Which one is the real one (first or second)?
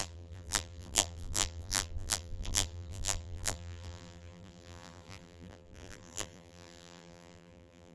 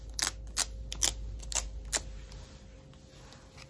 second